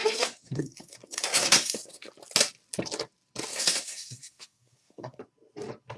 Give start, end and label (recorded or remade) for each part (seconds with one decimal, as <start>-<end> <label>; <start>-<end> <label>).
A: 0.0-2.1 remade; 2.1-3.5 recorded; 3.5-5.2 remade; 5.2-6.0 recorded